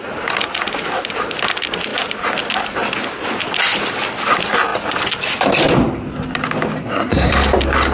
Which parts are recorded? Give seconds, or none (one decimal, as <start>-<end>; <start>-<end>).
0.0-6.8; 7.3-7.9